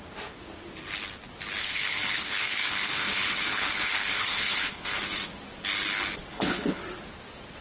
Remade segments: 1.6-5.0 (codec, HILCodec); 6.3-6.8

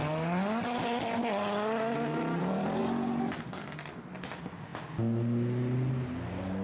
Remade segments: none

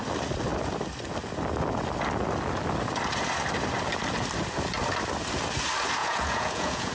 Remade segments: 6.0-6.9 (vocoder, Vocos)

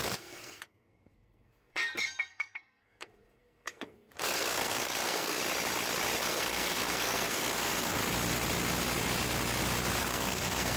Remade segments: 0.0-5.4 (codec, SNAC); 6.2-8.0; 10.0-10.8

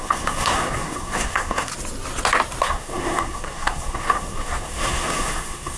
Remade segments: 0.0-1.7 (codec, SNAC); 2.6-5.8

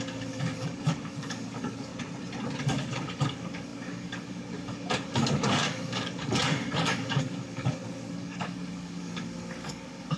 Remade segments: 0.0-1.9 (codec, DAC); 2.6-10.2